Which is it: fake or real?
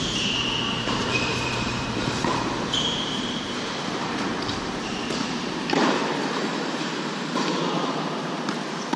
fake